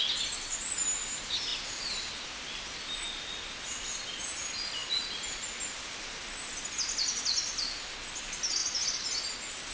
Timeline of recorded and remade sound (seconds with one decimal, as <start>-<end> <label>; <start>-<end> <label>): 0.0-9.7 recorded